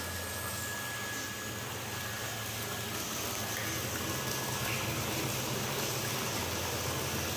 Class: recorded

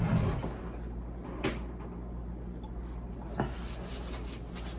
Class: recorded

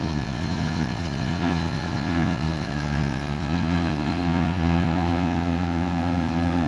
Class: remade